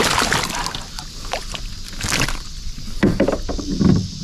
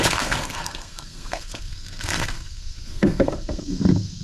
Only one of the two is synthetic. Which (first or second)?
second